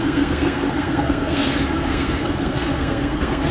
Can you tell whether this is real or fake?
fake